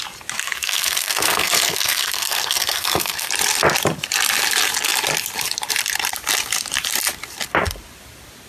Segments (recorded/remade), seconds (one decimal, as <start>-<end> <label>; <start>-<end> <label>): 0.0-0.4 recorded; 0.4-3.3 remade; 3.3-8.5 recorded